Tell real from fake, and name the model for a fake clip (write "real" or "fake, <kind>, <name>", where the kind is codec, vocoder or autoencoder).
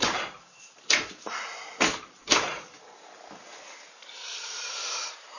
fake, vocoder, BigVGAN v2